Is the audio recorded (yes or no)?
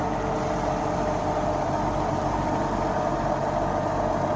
yes